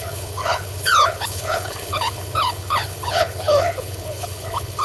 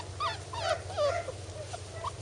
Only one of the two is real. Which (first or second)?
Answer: second